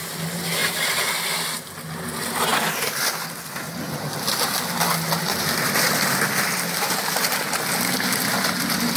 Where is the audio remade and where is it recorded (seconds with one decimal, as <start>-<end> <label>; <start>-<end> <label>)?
0.0-0.6 recorded; 0.6-1.3 remade; 1.3-9.0 recorded